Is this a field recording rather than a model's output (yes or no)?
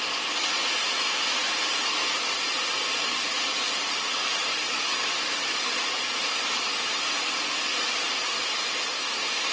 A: yes